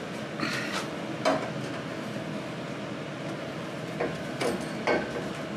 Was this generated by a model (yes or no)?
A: no